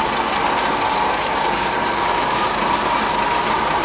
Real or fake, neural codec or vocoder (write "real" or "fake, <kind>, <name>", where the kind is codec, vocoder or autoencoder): real